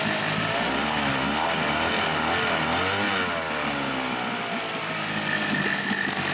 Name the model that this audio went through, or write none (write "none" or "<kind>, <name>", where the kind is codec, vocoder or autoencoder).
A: none